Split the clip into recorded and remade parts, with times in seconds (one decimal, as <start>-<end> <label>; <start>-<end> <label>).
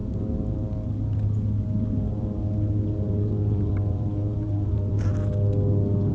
0.0-2.1 recorded; 2.1-5.1 remade; 5.1-6.1 recorded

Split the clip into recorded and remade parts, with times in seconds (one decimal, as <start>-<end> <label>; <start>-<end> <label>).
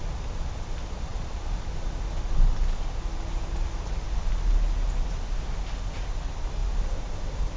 0.0-7.6 recorded